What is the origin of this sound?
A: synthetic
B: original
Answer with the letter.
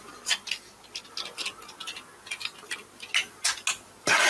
B